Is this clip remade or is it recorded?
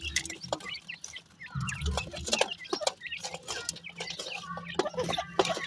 recorded